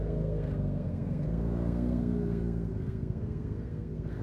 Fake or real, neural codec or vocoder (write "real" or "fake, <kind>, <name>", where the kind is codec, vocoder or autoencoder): fake, codec, SNAC